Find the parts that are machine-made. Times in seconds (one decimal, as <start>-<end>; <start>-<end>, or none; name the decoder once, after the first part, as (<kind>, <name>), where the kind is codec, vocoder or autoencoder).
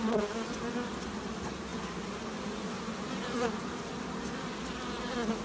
none